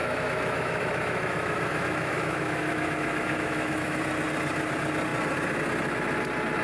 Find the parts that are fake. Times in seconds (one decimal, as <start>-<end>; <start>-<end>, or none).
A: 0.0-4.0